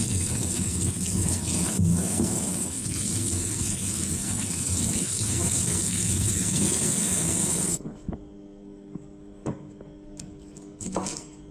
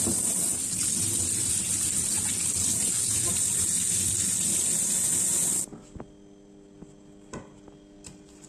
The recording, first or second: second